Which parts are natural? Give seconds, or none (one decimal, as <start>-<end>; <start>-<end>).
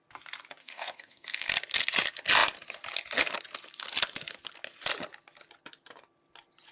0.0-0.6; 1.5-6.7